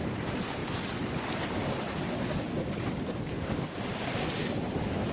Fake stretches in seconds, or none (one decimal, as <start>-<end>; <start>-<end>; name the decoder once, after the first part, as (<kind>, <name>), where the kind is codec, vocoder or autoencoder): none